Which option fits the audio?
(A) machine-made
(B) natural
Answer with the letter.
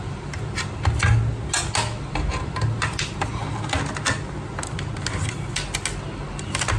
B